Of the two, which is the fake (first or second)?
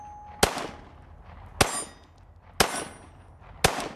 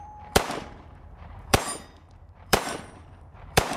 second